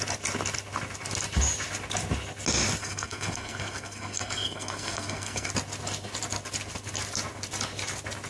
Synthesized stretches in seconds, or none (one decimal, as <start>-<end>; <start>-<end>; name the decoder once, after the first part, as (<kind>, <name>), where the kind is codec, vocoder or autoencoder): 2.8-5.5 (codec, SNAC)